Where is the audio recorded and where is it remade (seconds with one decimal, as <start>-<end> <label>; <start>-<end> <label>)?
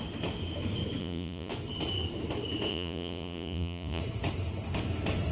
0.0-1.0 recorded; 1.0-1.5 remade; 1.5-2.7 recorded; 2.7-4.0 remade; 4.0-5.3 recorded